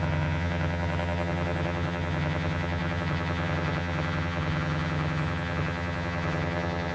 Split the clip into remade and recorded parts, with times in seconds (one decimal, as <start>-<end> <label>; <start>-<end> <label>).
0.0-6.9 remade

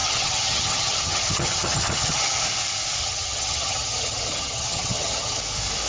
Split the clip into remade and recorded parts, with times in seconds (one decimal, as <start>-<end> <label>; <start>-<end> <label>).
0.0-2.4 remade; 2.4-3.0 recorded; 3.0-5.4 remade; 5.4-5.9 recorded